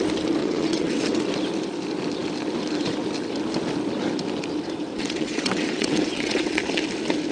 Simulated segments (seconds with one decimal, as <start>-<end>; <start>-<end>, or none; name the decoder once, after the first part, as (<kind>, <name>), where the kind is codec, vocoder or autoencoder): 0.4-1.2 (vocoder, WaveNeXt); 4.9-6.6